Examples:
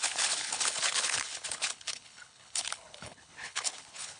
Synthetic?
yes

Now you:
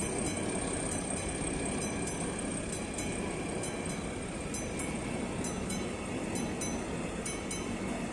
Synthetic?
no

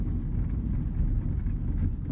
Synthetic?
no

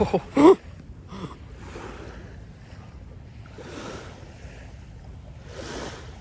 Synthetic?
no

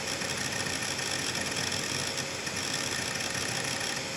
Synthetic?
no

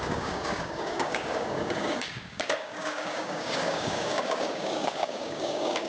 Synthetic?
yes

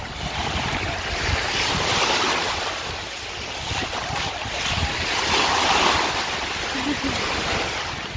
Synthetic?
no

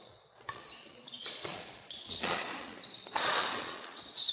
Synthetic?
yes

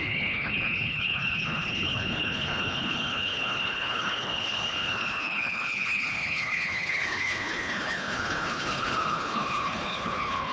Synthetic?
yes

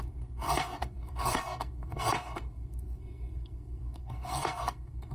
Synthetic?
yes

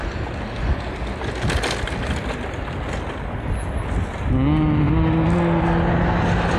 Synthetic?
no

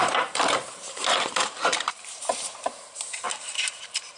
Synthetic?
yes